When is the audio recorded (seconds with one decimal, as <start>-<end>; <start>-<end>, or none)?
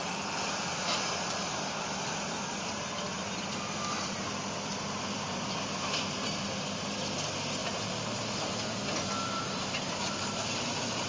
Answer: 7.6-10.0